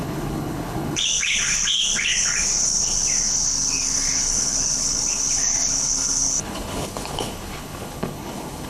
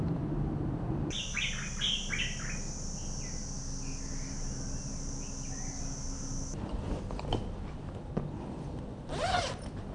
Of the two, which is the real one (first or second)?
second